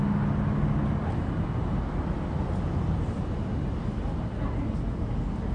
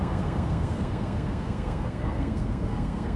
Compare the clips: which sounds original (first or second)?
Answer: first